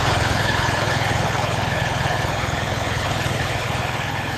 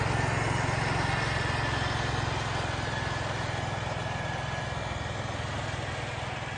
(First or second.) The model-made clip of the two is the first